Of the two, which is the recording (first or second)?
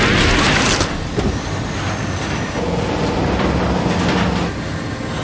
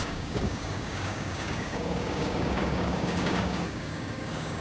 first